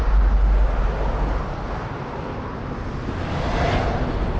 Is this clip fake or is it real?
real